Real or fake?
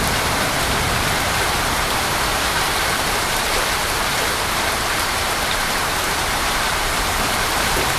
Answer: fake